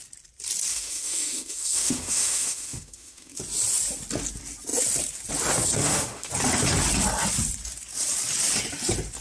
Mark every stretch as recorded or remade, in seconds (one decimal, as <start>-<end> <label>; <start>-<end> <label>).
0.0-0.7 recorded; 0.7-3.4 remade; 3.4-5.8 recorded; 5.8-6.3 remade; 6.3-9.2 recorded